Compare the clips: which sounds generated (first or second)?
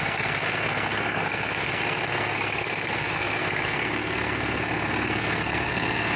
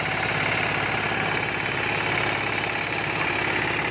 first